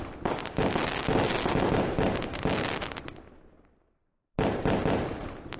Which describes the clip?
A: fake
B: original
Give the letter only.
B